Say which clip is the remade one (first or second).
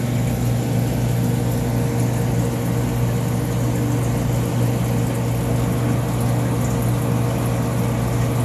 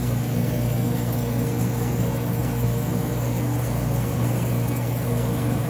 second